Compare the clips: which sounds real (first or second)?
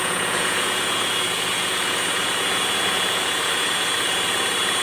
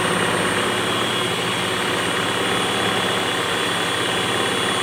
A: second